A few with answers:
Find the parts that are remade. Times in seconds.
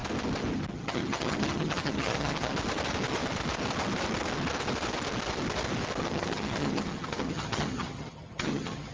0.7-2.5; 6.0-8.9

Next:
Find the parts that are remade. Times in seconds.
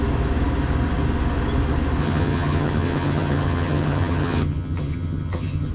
2.0-5.7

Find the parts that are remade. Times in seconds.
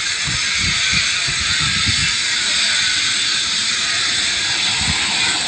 0.0-5.5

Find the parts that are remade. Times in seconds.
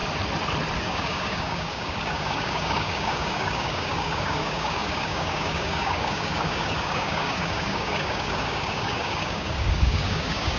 0.8-10.6